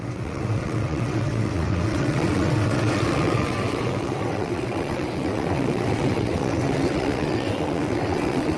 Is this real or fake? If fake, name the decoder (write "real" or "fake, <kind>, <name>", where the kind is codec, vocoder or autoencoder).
fake, vocoder, WaveNeXt